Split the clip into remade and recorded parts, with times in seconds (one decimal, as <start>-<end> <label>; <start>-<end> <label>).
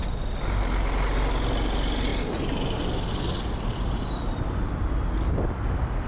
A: 0.0-6.1 recorded